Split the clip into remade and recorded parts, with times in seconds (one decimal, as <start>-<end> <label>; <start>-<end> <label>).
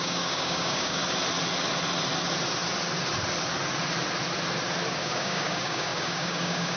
0.0-1.0 remade; 1.0-5.0 recorded; 5.0-6.8 remade